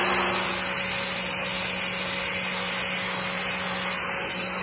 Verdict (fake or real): real